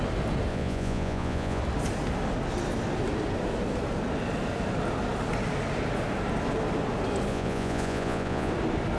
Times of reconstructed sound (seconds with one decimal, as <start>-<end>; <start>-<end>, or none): 0.5-1.6; 7.3-8.5